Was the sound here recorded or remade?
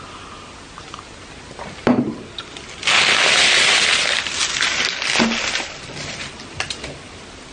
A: recorded